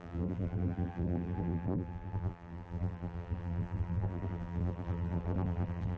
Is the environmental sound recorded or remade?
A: remade